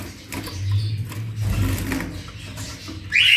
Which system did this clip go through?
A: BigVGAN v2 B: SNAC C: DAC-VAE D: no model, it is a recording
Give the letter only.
D